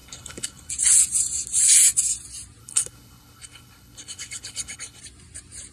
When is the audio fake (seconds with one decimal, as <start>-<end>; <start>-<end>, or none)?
0.0-0.7; 2.6-5.0